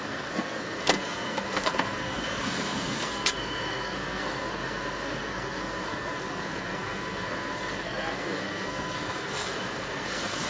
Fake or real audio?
fake